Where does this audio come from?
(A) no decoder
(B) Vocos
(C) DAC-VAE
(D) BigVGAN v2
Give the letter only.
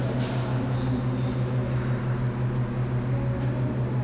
A